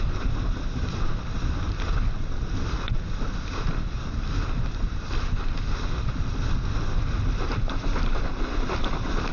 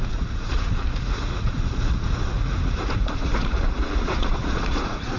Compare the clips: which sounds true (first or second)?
first